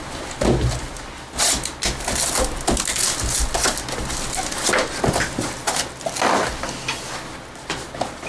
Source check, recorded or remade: recorded